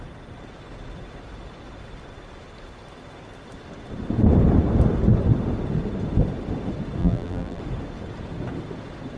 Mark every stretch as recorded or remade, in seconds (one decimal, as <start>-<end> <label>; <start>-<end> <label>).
0.0-7.0 recorded; 7.0-7.6 remade; 7.6-9.2 recorded